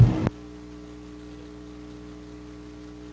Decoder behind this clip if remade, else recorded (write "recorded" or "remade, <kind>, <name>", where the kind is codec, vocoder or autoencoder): recorded